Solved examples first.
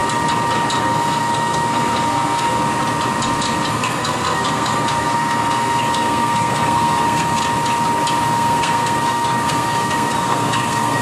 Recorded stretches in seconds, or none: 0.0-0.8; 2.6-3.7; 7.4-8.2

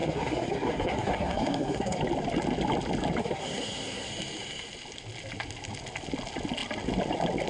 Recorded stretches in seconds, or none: 2.0-3.2; 4.1-7.5

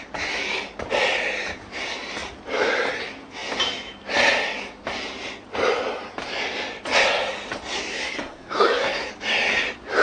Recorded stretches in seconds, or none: 0.0-7.9; 9.1-10.0

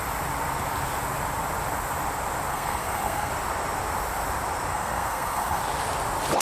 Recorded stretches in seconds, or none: 0.0-2.5; 3.3-4.7; 5.6-6.4